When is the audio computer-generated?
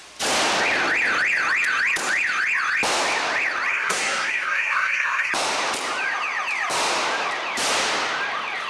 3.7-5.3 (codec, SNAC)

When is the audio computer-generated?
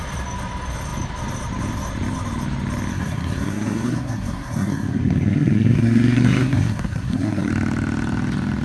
2.9-7.5 (codec, SNAC)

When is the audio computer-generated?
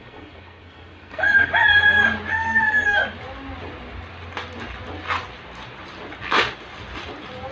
0.0-1.5 (codec, SNAC); 2.3-3.0